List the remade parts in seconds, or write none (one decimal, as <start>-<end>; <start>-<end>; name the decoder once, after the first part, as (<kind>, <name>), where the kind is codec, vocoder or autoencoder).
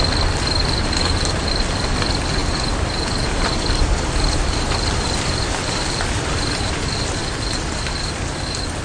0.8-1.5 (vocoder, BigVGAN v2); 2.4-6.7